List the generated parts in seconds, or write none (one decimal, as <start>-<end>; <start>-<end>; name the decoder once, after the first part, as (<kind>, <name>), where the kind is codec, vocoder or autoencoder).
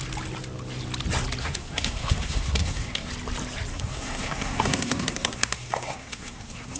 1.4-3.1 (codec, SNAC); 3.7-6.8